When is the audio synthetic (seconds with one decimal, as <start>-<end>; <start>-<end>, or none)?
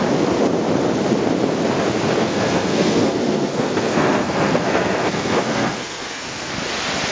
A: 2.2-6.5